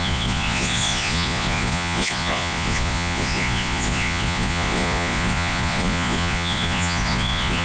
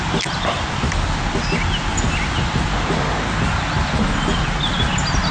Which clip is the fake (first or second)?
first